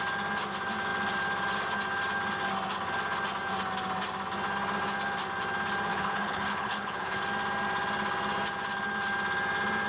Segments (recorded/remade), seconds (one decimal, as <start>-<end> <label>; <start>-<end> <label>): 0.0-5.9 recorded; 5.9-7.2 remade; 7.2-9.9 recorded